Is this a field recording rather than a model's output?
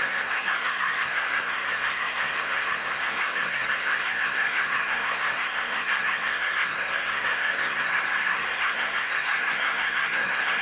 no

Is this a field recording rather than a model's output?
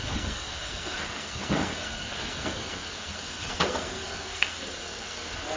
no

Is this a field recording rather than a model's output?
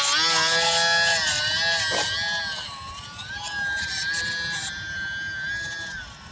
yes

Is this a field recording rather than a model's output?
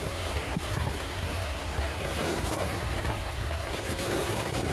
no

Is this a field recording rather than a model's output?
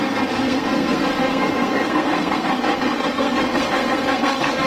no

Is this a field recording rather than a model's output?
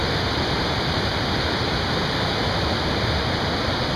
yes